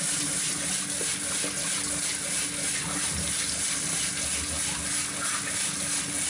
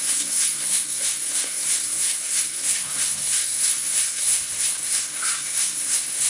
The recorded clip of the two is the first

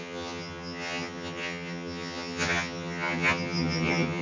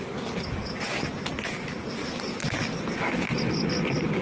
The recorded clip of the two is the second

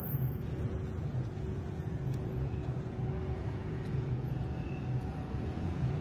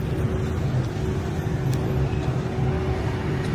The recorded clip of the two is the second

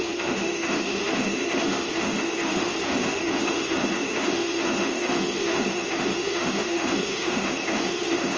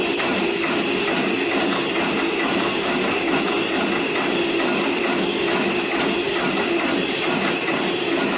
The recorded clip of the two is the second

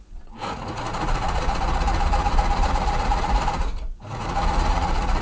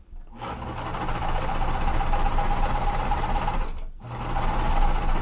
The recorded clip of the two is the second